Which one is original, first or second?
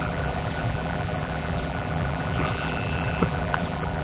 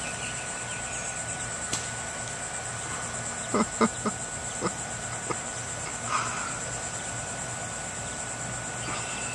second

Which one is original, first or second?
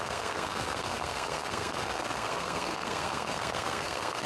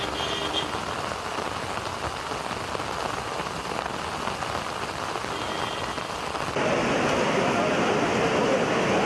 second